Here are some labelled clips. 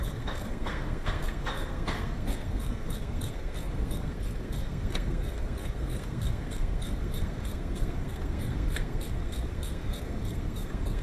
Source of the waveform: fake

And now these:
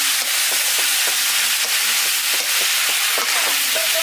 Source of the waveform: real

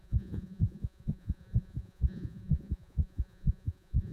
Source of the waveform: fake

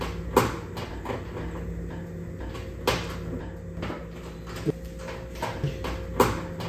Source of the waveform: real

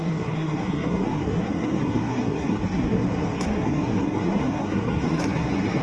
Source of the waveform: fake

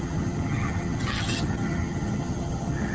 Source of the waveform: fake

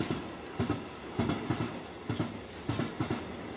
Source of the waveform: real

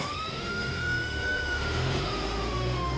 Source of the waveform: fake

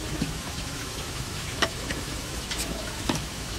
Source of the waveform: fake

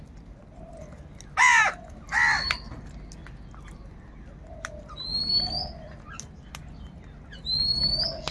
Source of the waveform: real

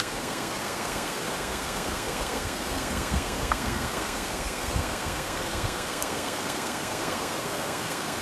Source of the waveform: fake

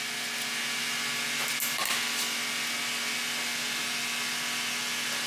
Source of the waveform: real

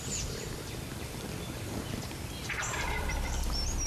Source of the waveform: fake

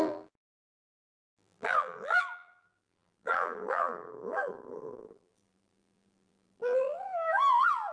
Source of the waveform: fake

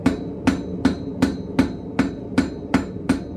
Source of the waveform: real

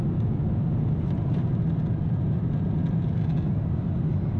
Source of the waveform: real